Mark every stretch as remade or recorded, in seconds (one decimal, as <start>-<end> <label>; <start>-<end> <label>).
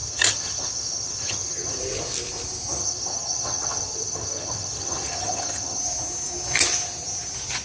0.0-1.8 remade; 1.8-2.8 recorded; 2.8-5.8 remade; 5.8-7.6 recorded